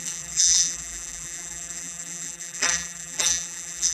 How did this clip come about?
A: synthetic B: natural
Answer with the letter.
A